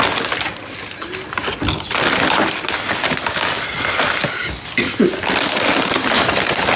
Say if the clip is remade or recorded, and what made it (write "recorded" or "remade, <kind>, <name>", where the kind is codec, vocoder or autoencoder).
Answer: recorded